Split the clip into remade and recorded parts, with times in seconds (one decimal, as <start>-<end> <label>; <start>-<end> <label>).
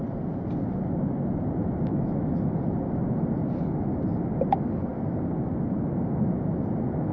0.0-1.9 recorded; 1.9-2.5 remade; 2.5-7.1 recorded